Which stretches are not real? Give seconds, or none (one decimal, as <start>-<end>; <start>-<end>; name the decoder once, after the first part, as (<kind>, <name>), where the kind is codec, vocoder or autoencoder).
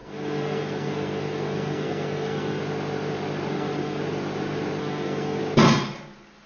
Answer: 0.0-2.6 (codec, SNAC); 3.5-4.0; 4.8-5.4